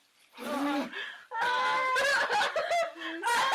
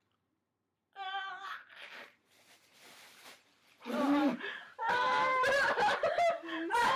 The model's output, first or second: second